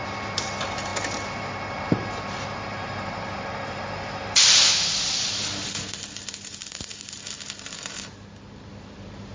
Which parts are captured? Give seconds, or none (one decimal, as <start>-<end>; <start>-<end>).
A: none